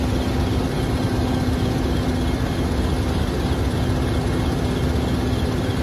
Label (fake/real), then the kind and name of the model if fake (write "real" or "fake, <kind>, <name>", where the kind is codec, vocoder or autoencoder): real